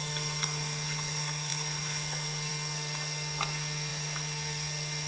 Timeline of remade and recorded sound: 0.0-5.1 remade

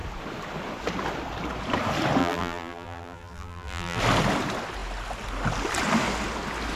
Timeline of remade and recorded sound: 0.0-2.2 recorded; 2.2-4.0 remade; 4.0-6.8 recorded

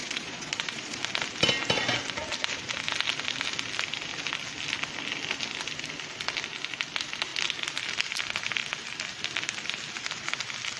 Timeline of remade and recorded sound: 0.0-1.0 remade; 1.0-10.8 recorded

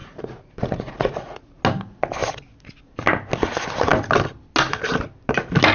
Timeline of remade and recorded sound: 0.0-1.6 remade; 1.6-5.7 recorded

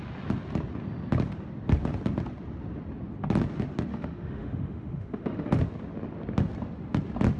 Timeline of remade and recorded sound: 0.0-3.9 recorded; 3.9-5.6 remade; 5.6-7.4 recorded

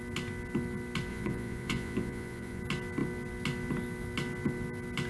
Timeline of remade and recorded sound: 0.0-1.1 recorded; 1.1-2.6 remade; 2.6-5.1 recorded